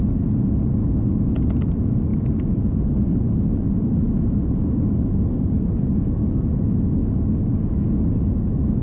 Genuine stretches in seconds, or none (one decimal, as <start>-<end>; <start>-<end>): 0.0-2.1; 5.6-8.8